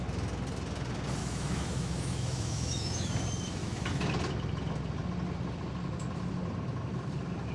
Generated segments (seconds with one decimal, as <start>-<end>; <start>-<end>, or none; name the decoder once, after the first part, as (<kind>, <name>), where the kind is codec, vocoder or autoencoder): 1.2-3.1 (autoencoder, DAC-VAE); 3.6-4.1